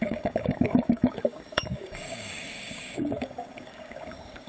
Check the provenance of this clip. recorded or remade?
remade